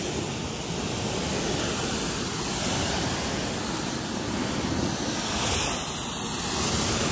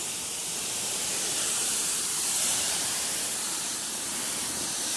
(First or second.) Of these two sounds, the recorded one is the first